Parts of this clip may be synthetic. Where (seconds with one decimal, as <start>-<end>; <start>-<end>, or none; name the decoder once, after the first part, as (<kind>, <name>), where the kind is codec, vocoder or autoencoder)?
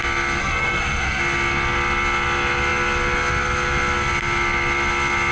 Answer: 0.4-1.2 (codec, SNAC)